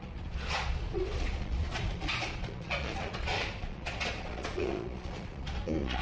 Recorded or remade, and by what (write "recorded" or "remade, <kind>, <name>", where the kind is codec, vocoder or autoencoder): remade, vocoder, Vocos